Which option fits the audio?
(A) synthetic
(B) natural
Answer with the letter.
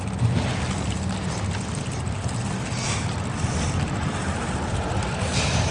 B